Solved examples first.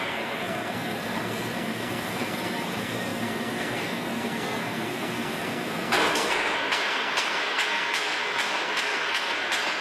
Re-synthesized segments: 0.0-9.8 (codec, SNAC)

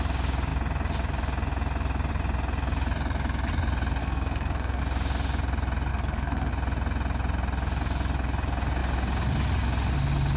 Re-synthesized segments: 4.0-4.8 (codec, SNAC); 5.9-6.5

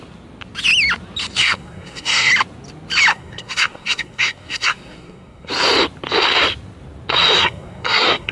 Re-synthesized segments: 1.4-2.3 (codec, SNAC); 3.1-5.5; 7.4-8.3

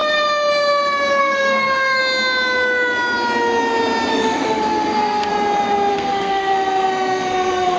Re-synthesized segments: 1.2-2.0 (codec, SNAC); 4.1-5.3; 5.9-7.8

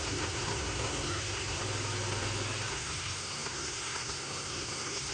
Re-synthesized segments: 0.0-1.6 (codec, SNAC); 2.7-5.1

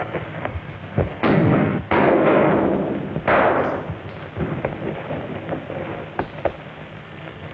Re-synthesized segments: 0.0-2.5 (codec, SNAC); 7.0-7.5

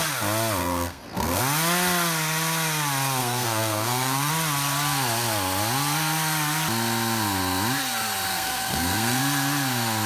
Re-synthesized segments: 0.6-1.4 (codec, SNAC); 3.2-4.3; 8.3-9.2

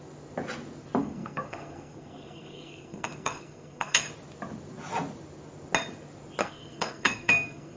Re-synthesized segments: 1.0-4.1 (codec, SNAC); 6.4-7.8